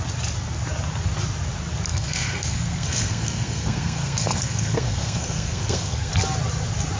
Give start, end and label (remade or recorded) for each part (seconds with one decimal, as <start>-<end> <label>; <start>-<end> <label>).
0.0-1.9 recorded; 1.9-6.1 remade; 6.1-7.0 recorded